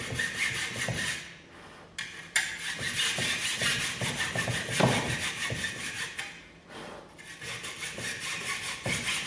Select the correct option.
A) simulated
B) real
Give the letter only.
B